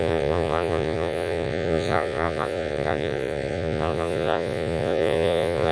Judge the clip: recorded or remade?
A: remade